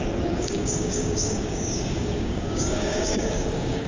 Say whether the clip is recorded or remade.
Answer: remade